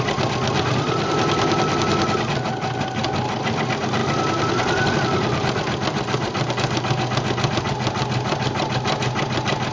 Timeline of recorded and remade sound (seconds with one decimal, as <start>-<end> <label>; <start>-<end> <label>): 0.0-9.7 recorded